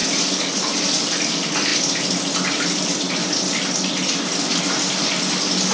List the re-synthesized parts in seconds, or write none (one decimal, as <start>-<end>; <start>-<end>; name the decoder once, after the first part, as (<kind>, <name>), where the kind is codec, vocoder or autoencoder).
none